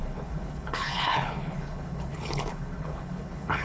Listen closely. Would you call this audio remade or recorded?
remade